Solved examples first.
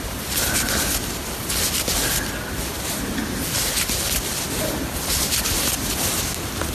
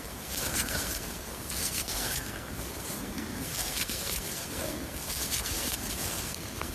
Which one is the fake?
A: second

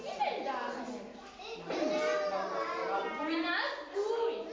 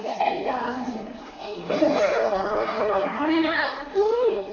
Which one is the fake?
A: second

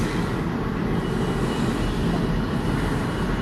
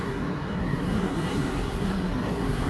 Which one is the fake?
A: second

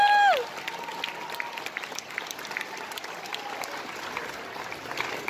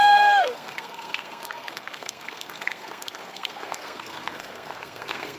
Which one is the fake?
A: second